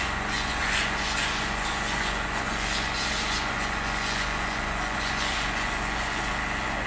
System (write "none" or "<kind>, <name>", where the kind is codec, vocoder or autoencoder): vocoder, Vocos